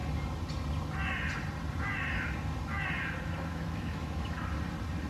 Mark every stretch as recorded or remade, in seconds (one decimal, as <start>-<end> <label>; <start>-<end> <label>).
0.0-3.5 recorded; 3.5-4.4 remade; 4.4-5.1 recorded